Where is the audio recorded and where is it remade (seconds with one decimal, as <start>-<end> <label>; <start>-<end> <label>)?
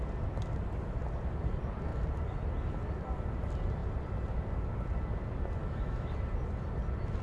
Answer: 0.0-5.6 recorded; 5.6-6.1 remade; 6.1-7.2 recorded